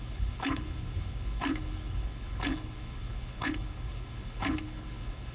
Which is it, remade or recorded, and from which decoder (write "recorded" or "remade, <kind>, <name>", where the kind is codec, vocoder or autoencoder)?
remade, codec, HILCodec